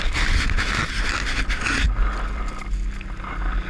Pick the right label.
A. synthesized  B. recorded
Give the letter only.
B